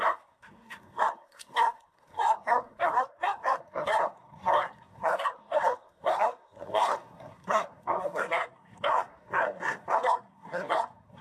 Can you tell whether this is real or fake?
fake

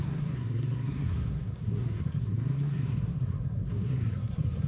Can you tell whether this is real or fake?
fake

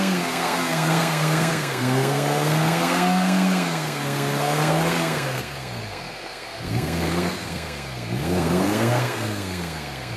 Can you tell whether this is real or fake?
fake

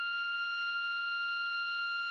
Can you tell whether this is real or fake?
real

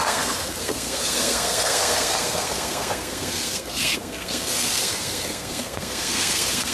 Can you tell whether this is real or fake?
fake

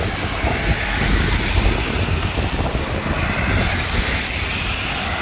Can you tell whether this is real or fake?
real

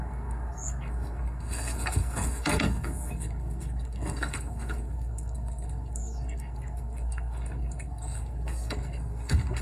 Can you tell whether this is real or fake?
fake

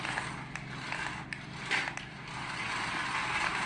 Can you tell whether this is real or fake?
real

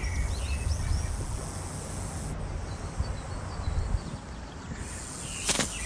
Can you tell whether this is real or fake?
real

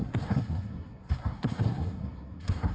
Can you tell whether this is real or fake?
fake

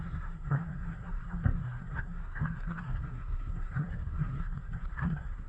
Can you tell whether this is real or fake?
fake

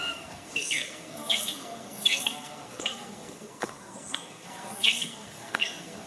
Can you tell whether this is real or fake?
fake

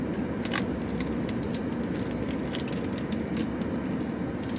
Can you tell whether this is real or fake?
real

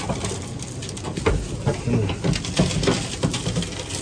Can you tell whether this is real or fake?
real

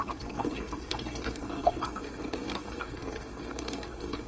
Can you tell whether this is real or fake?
fake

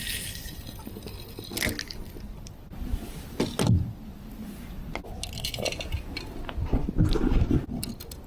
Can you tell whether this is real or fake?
real